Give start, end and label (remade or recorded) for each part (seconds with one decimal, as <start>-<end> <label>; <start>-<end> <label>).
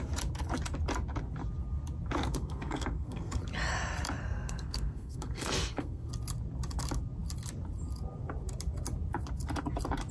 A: 0.0-2.2 recorded; 2.2-3.4 remade; 3.4-4.2 recorded; 4.2-6.1 remade; 6.1-10.1 recorded